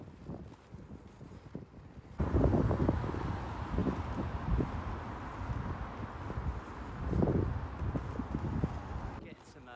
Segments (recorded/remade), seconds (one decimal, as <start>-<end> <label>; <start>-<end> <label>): 0.0-3.8 recorded; 3.8-4.8 remade; 4.8-9.8 recorded